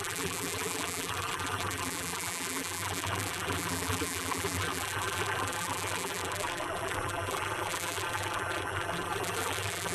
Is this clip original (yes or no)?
no